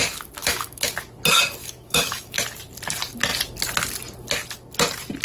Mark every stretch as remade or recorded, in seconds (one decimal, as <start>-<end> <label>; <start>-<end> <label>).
0.0-0.4 recorded; 0.4-0.9 remade; 0.9-1.6 recorded; 1.6-2.4 remade; 2.4-5.2 recorded